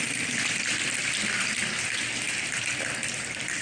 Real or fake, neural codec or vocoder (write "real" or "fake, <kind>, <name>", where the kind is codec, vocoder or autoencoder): fake, vocoder, BigVGAN v2